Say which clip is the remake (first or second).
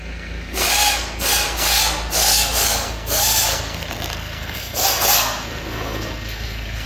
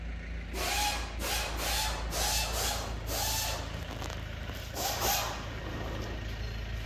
first